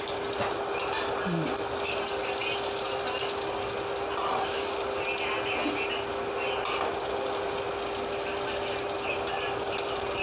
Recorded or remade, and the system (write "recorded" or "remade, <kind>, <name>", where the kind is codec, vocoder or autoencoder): recorded